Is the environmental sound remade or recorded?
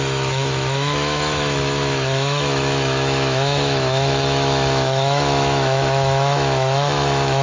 remade